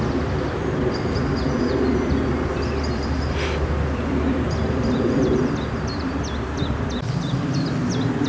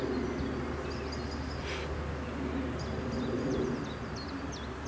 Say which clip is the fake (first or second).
first